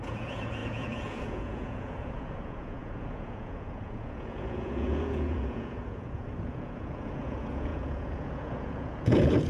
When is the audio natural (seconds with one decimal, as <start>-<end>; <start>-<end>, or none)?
none